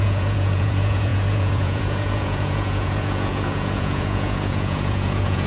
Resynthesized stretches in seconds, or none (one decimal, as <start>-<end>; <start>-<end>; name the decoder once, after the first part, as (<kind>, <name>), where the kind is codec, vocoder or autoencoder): 0.0-5.5 (vocoder, Vocos)